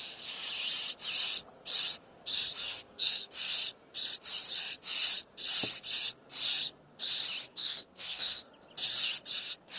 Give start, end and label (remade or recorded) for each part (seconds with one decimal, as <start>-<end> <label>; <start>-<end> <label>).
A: 0.0-2.6 recorded; 2.6-3.5 remade; 3.5-7.5 recorded; 7.5-8.5 remade; 8.5-9.8 recorded